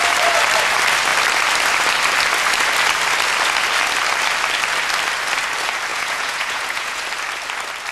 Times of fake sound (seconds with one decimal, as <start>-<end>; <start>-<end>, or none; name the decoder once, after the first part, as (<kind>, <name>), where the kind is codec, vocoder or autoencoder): 5.9-7.0 (vocoder, Vocos)